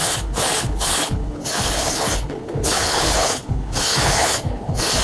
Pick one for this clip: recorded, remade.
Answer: remade